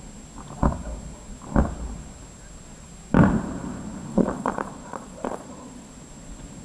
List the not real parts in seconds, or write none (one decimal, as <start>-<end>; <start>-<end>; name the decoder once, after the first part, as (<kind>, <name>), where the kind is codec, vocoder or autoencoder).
4.1-5.9 (vocoder, Vocos)